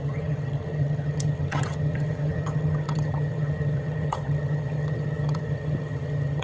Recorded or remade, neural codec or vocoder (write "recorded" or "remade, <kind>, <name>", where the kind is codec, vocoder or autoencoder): remade, vocoder, HiFi-GAN